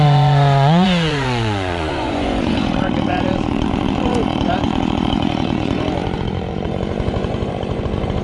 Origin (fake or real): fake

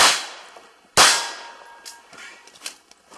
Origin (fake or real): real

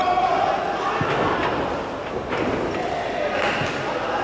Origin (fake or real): real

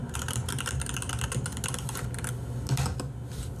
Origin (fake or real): real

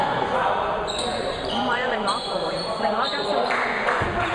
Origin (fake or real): fake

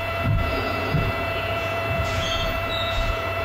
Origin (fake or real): fake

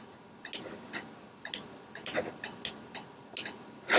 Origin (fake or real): real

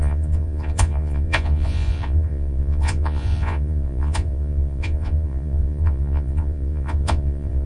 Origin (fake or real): fake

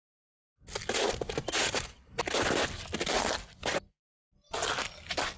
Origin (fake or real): real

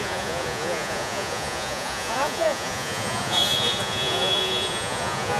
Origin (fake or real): fake